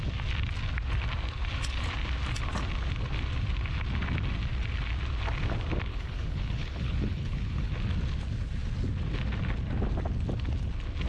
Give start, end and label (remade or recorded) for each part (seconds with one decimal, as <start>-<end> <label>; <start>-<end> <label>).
0.0-5.9 recorded; 5.9-7.7 remade; 7.7-11.1 recorded